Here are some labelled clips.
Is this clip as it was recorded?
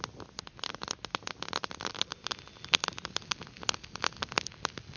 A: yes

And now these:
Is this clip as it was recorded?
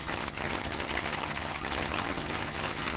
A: no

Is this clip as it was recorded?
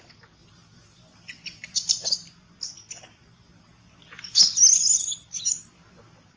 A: yes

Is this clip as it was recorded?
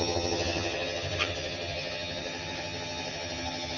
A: no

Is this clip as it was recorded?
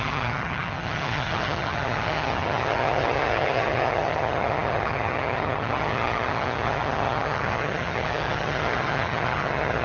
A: no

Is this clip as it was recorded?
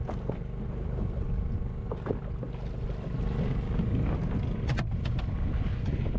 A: yes